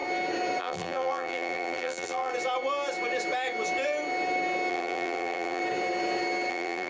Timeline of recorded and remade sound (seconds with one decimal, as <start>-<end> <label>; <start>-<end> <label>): 0.0-0.6 recorded; 0.6-2.3 remade; 2.3-4.7 recorded; 4.7-5.6 remade; 5.6-6.5 recorded; 6.5-6.9 remade